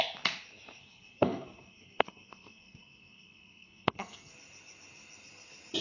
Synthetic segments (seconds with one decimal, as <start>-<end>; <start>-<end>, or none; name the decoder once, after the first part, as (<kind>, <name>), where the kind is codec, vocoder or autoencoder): 0.8-4.3 (codec, SNAC)